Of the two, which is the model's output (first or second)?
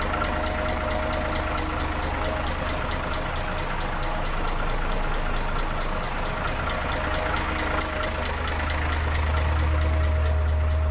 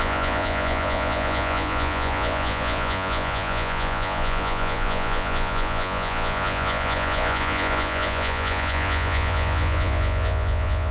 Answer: second